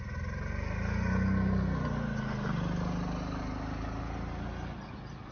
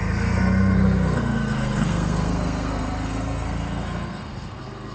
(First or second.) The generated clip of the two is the second